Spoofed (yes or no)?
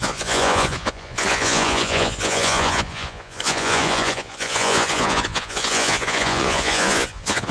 yes